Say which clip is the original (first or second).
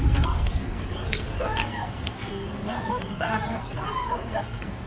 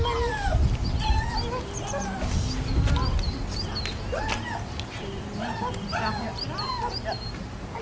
second